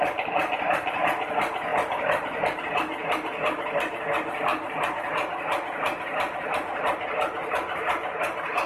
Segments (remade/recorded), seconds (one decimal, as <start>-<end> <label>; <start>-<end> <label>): 0.0-8.7 recorded